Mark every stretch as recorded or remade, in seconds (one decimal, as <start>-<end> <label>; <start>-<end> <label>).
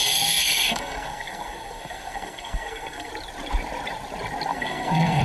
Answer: 0.0-3.1 remade; 3.1-4.5 recorded; 4.5-5.2 remade